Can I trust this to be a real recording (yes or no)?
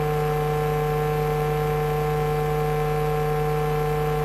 yes